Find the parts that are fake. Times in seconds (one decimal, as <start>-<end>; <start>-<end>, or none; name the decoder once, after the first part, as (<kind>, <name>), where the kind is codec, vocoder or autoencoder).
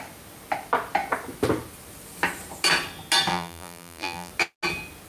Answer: 3.3-4.3 (vocoder, BigVGAN v2)